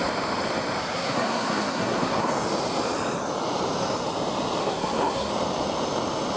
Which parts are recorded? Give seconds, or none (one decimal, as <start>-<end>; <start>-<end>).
0.0-0.8; 2.3-4.6; 5.3-6.4